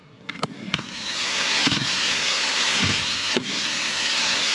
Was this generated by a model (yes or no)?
yes